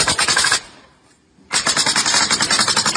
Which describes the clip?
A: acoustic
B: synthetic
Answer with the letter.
B